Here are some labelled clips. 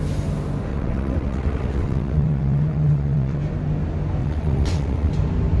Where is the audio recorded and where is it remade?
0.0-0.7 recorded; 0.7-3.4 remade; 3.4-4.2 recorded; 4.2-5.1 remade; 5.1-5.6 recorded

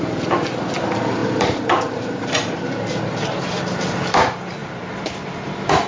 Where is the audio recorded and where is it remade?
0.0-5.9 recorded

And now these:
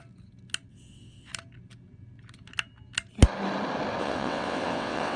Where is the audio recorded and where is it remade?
0.0-0.7 recorded; 0.7-1.3 remade; 1.3-4.0 recorded; 4.0-5.2 remade